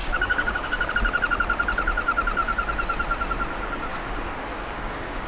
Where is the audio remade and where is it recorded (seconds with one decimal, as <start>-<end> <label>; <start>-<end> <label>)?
0.0-0.9 remade; 0.9-3.9 recorded; 3.9-5.3 remade